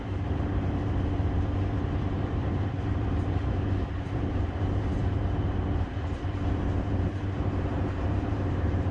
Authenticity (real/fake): fake